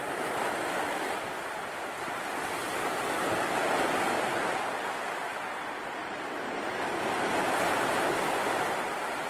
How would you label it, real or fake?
real